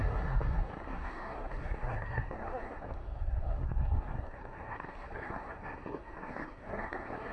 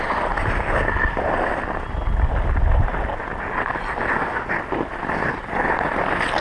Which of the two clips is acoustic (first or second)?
second